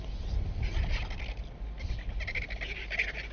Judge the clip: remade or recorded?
recorded